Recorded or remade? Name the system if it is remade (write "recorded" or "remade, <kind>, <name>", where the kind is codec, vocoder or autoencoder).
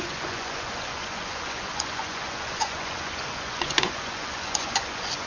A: remade, vocoder, Vocos